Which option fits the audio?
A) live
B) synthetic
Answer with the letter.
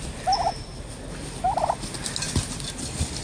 A